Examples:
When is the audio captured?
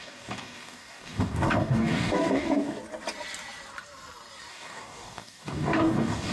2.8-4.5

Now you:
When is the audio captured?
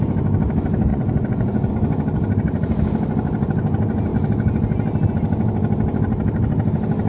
0.0-0.9; 1.7-7.1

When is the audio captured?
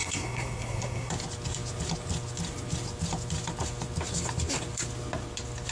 1.1-5.7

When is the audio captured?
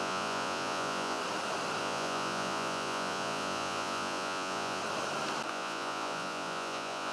1.2-1.8; 4.8-5.5